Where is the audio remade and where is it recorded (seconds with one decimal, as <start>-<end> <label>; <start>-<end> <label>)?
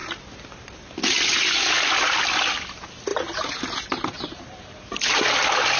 0.0-3.1 recorded; 3.1-4.7 remade; 4.7-5.8 recorded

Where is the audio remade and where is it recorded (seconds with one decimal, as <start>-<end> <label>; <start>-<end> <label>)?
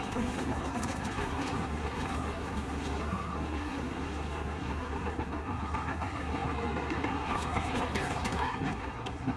0.0-9.4 remade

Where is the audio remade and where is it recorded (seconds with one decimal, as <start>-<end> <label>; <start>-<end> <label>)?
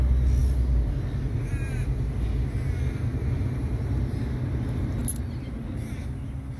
0.0-6.6 recorded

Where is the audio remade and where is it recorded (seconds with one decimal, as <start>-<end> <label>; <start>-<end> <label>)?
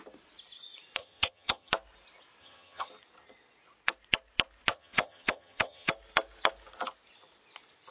0.0-1.0 recorded; 1.0-1.7 remade; 1.7-2.4 recorded; 2.4-2.9 remade; 2.9-4.7 recorded; 4.7-5.9 remade; 5.9-7.9 recorded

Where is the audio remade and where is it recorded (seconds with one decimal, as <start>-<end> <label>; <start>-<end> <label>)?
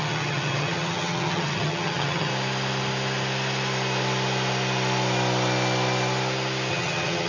0.0-2.3 remade; 2.3-6.7 recorded; 6.7-7.3 remade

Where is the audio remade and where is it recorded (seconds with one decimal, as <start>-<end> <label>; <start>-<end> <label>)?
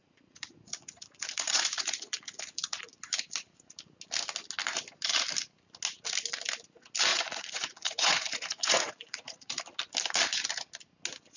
0.0-2.9 remade; 2.9-7.1 recorded; 7.1-9.6 remade; 9.6-11.4 recorded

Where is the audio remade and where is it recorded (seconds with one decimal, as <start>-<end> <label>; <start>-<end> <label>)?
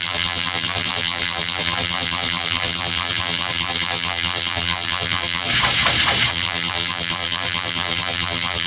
0.0-5.5 remade; 5.5-6.3 recorded; 6.3-8.7 remade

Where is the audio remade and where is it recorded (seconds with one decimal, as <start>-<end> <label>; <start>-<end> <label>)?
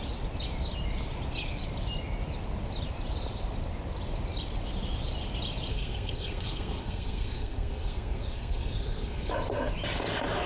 0.0-5.7 recorded; 5.7-9.3 remade; 9.3-10.5 recorded